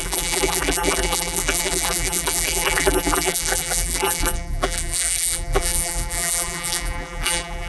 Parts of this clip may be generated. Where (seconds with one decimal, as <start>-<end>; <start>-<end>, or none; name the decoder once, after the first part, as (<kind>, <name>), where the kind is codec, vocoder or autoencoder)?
0.0-7.7 (vocoder, BigVGAN v2)